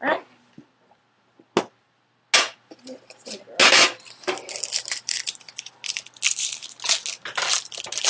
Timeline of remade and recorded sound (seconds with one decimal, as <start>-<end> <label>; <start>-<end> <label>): 0.0-8.1 recorded